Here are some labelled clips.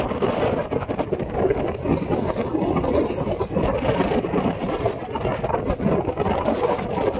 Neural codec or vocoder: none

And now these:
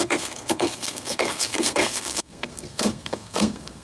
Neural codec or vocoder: codec, SNAC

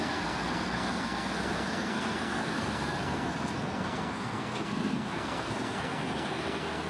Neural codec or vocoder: codec, SNAC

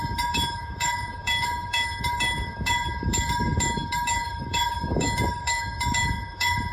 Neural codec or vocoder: autoencoder, DAC-VAE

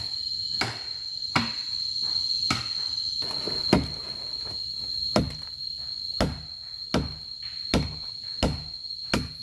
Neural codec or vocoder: none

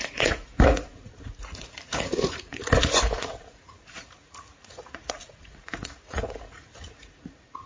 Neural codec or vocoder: vocoder, Vocos